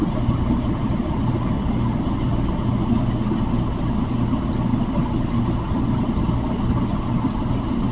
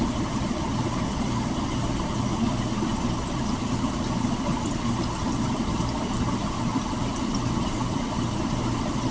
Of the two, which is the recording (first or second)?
first